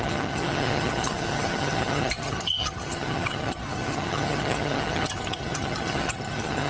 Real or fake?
fake